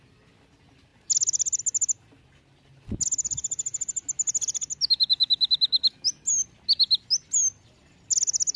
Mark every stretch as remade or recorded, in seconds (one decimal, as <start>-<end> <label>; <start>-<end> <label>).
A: 0.0-8.6 recorded